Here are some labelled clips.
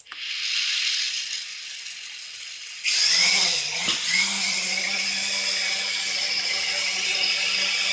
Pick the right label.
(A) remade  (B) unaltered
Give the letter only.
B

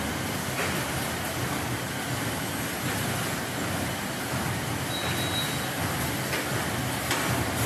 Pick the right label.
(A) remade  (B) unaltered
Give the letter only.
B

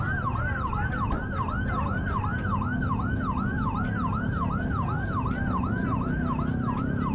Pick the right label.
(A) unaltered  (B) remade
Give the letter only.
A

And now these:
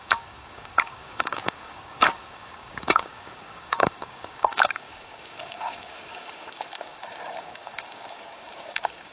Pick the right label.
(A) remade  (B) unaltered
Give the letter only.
A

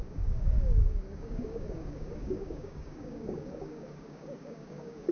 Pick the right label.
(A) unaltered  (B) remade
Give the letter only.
B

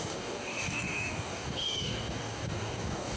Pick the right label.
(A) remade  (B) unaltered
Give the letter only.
A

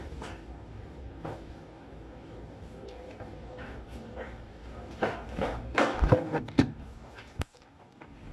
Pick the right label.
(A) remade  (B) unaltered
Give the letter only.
A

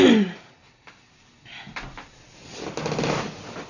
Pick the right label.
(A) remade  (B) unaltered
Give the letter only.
B